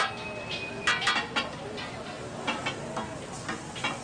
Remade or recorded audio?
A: recorded